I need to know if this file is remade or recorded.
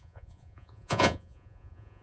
remade